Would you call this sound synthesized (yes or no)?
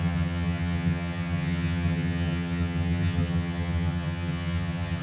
yes